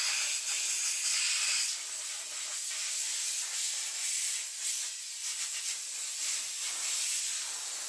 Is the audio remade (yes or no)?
no